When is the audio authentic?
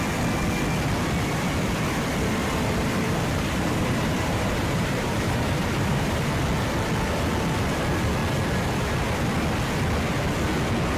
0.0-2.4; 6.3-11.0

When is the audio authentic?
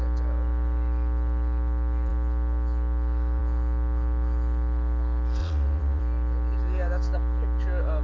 0.0-5.4; 6.0-8.0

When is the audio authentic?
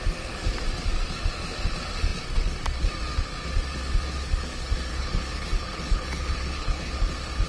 0.0-4.9; 6.9-7.5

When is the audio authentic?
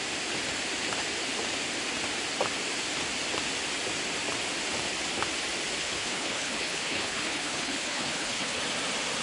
0.0-5.8; 8.6-9.2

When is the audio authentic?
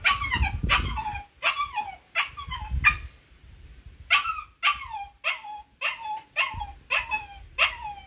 0.0-8.1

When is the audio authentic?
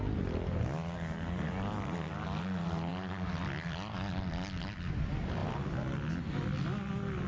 0.0-7.3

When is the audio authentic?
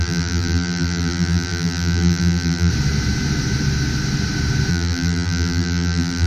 2.7-4.7